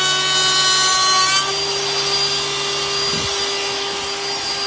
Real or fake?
real